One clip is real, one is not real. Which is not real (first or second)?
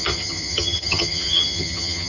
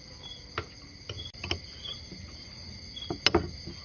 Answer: first